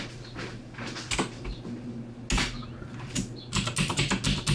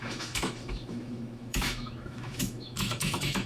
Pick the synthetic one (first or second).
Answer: second